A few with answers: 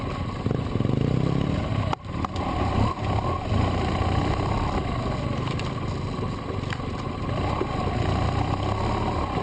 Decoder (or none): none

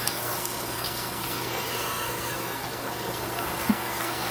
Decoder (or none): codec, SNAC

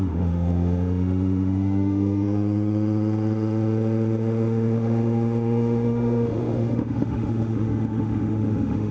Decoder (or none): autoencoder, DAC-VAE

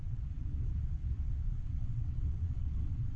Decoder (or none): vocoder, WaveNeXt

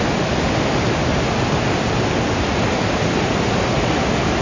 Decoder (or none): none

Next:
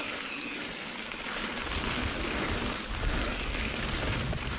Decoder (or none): none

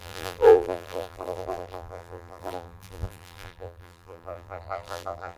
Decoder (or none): vocoder, BigVGAN v2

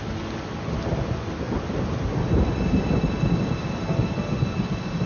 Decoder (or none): none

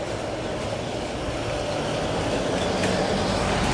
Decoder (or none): none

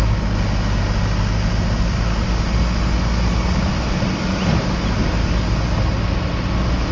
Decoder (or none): none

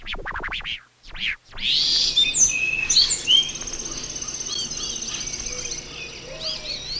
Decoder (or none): none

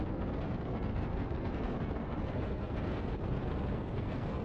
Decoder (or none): codec, SNAC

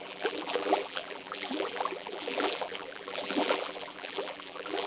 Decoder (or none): vocoder, BigVGAN v2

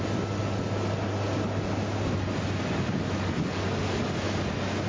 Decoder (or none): none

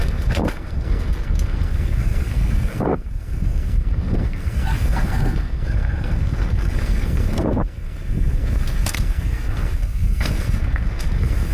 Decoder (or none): codec, SNAC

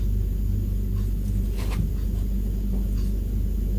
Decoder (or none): none